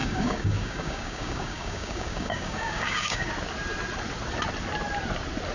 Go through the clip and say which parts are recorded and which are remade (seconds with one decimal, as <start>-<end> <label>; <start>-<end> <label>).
0.0-3.3 remade; 3.3-5.5 recorded

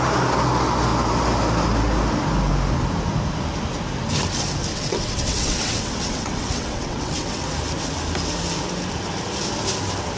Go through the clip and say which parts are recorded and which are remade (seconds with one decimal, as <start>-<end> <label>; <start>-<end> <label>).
0.0-4.7 recorded; 4.7-7.5 remade; 7.5-10.2 recorded

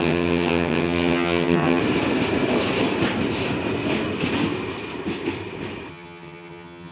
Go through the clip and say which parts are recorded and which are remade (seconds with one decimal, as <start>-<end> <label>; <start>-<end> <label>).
0.0-1.8 remade; 1.8-5.9 recorded; 5.9-6.9 remade

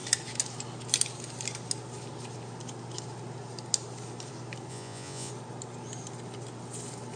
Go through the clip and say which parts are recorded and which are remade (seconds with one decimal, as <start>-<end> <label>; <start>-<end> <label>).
0.0-4.7 recorded; 4.7-5.3 remade; 5.3-7.2 recorded

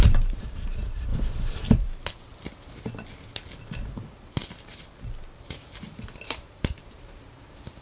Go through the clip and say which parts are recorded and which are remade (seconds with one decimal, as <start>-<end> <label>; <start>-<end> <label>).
0.0-2.3 remade; 2.3-3.9 recorded; 3.9-4.4 remade; 4.4-5.6 recorded; 5.6-7.8 remade

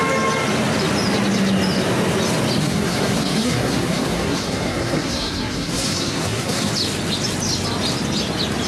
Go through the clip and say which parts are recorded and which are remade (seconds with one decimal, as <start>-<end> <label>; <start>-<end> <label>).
0.0-2.6 recorded; 2.6-6.7 remade; 6.7-8.7 recorded